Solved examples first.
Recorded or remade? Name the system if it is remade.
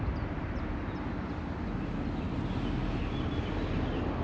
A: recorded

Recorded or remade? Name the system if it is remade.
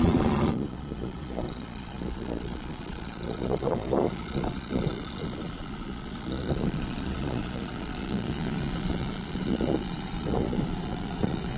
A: remade, vocoder, Vocos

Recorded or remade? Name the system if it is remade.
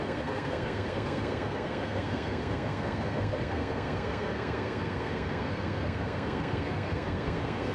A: remade, codec, SNAC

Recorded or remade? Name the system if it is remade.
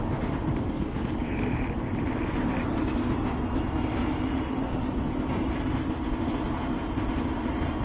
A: recorded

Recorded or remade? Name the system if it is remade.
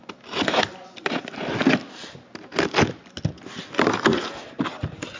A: recorded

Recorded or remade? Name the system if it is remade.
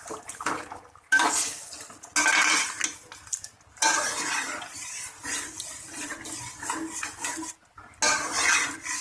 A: recorded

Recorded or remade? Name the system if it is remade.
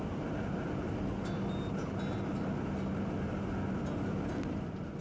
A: recorded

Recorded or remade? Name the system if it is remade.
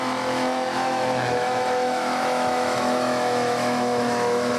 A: remade, autoencoder, DAC-VAE